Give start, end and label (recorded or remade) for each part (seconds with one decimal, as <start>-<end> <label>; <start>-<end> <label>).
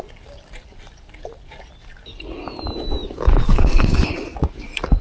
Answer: 0.0-5.0 recorded